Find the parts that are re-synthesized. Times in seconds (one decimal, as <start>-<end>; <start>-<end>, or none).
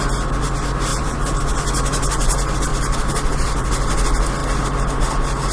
0.9-1.5; 2.7-3.7